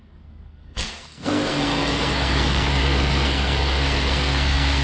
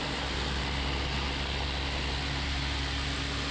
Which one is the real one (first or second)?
second